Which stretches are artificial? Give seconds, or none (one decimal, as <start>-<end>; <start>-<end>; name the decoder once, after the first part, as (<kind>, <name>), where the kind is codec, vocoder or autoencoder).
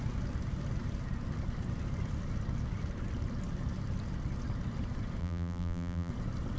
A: 5.2-6.1 (vocoder, BigVGAN v2)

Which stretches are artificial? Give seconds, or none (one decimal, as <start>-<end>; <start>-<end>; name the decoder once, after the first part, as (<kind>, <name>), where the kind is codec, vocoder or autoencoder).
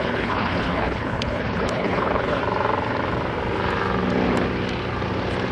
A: 0.0-2.4 (codec, HILCodec)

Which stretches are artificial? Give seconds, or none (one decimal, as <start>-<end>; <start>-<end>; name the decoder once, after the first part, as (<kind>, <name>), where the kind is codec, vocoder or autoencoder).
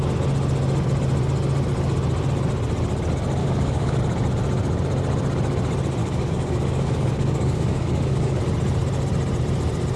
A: 3.4-4.0 (codec, DAC); 6.0-8.4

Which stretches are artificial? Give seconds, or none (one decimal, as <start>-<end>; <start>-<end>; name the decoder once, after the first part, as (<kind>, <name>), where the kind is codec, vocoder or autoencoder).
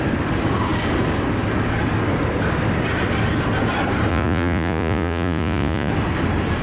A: 4.1-5.9 (vocoder, Vocos)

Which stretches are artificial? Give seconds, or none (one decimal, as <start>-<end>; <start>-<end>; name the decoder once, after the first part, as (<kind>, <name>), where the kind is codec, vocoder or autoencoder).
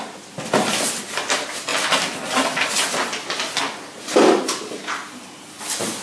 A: none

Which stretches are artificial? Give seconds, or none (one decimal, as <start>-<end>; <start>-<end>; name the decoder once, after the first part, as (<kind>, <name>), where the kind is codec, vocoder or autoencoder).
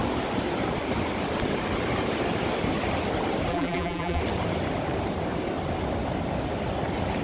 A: 3.5-4.2 (vocoder, BigVGAN v2)